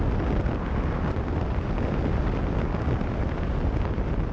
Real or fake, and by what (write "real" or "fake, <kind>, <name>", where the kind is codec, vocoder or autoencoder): real